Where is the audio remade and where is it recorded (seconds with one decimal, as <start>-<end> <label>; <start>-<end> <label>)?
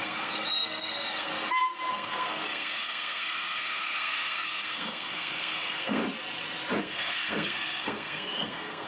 0.0-1.3 remade; 1.3-1.9 recorded; 1.9-6.0 remade; 6.0-6.8 recorded; 6.8-8.9 remade